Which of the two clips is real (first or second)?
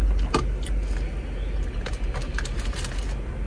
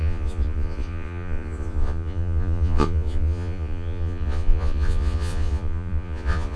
first